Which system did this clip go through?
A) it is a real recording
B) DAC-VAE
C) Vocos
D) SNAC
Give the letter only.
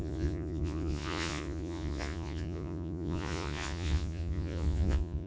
C